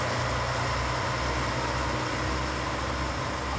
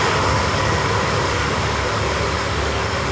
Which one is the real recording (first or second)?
first